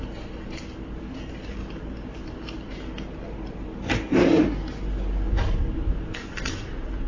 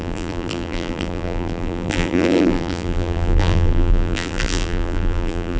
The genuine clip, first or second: first